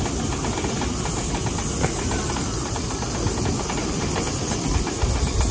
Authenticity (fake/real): real